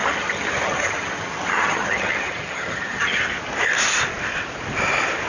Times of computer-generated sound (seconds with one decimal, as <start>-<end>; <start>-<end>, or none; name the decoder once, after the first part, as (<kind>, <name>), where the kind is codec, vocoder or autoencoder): 0.0-3.2 (vocoder, HiFi-GAN)